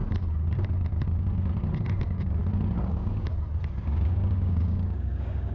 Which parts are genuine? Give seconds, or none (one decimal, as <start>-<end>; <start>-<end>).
0.0-2.0; 2.4-2.9; 3.3-3.8